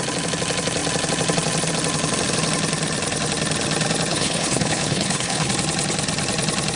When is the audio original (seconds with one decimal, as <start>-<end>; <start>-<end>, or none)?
0.0-4.1; 5.5-6.8